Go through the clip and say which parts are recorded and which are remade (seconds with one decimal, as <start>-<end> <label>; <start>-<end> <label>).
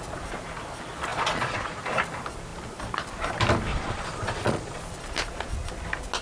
0.0-1.1 recorded; 1.1-1.8 remade; 1.8-3.7 recorded; 3.7-4.8 remade; 4.8-6.2 recorded